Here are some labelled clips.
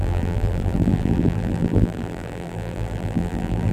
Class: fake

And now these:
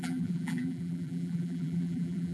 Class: fake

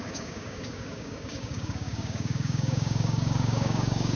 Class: fake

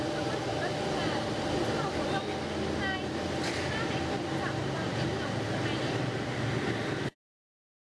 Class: real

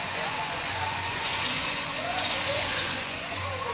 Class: fake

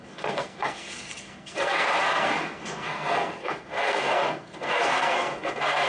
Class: fake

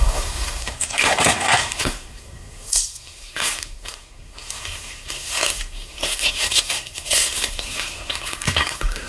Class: fake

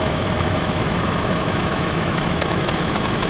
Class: fake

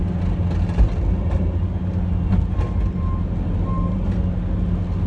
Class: real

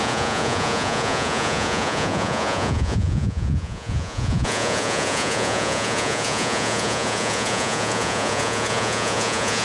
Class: fake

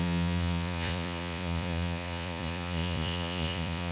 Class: fake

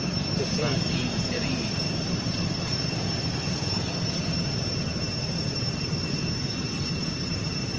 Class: fake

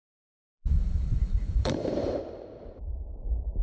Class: fake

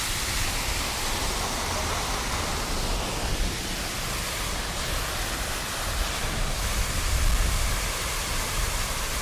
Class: real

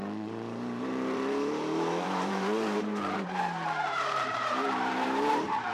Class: fake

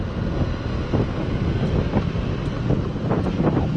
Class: real